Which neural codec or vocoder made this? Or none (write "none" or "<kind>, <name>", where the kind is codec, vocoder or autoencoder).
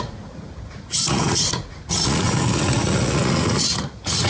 vocoder, Vocos